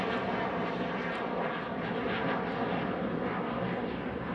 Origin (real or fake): real